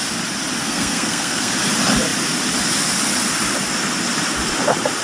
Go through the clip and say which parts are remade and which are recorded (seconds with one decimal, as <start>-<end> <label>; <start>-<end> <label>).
0.0-0.6 recorded; 0.6-1.5 remade; 1.5-5.0 recorded